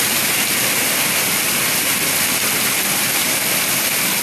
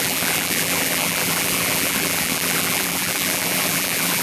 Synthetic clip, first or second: second